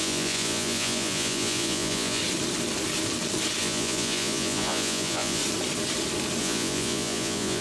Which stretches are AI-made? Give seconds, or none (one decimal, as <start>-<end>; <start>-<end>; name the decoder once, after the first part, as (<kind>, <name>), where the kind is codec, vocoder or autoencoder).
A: 0.0-2.2 (vocoder, Vocos); 3.6-5.4; 6.4-7.6